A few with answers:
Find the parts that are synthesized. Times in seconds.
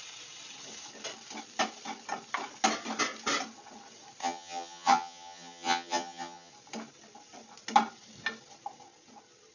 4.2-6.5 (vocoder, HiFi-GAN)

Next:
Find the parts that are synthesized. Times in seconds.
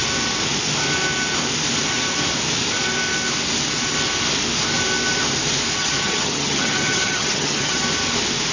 5.8-7.8 (vocoder, HiFi-GAN)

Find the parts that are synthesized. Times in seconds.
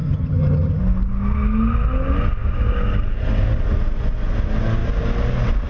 0.0-0.8 (vocoder, HiFi-GAN)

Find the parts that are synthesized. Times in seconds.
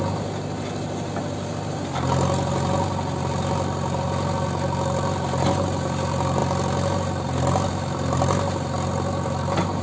none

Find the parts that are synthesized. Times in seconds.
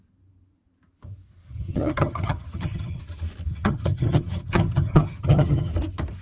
1.5-3.0 (vocoder, HiFi-GAN); 3.5-5.7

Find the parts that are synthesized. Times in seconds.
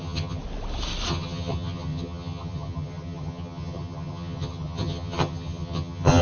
0.0-0.4 (vocoder, HiFi-GAN); 1.1-6.2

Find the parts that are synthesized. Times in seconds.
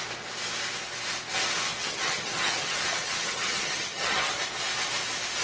1.8-4.3 (vocoder, HiFi-GAN)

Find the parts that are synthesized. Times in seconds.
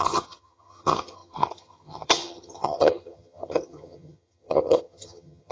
0.0-5.5 (vocoder, HiFi-GAN)